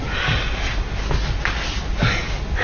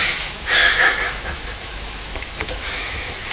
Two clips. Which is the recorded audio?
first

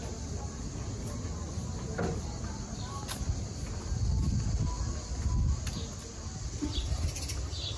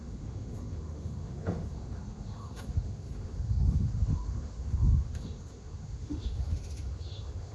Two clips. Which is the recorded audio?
first